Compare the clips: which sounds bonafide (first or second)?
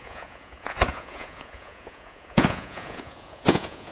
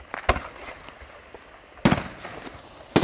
second